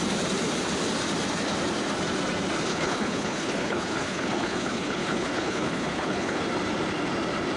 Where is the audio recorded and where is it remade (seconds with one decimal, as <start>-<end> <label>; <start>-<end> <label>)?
0.0-2.7 recorded; 2.7-6.4 remade; 6.4-7.6 recorded